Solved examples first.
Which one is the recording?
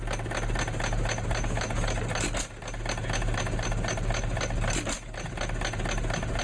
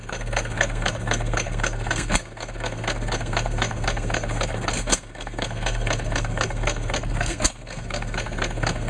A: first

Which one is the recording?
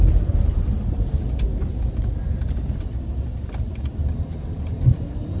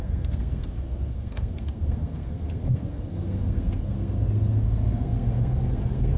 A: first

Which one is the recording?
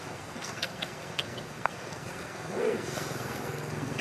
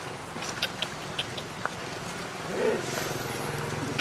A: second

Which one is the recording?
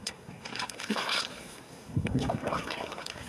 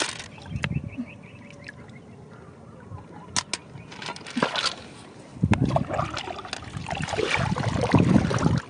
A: second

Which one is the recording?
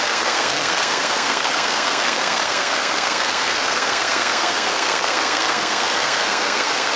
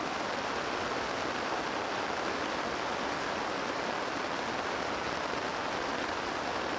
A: second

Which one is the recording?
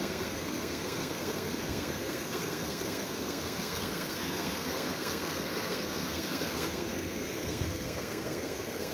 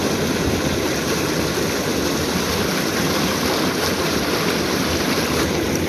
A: second